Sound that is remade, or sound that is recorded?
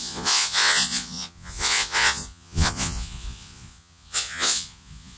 remade